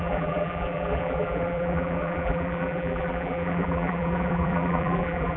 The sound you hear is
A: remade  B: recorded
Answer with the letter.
A